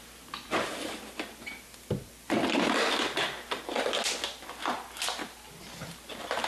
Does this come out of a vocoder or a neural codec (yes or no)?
no